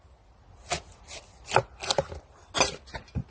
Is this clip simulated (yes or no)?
no